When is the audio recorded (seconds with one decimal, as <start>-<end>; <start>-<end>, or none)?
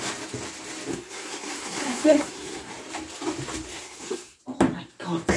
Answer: 0.0-0.9; 2.7-3.7; 4.4-5.4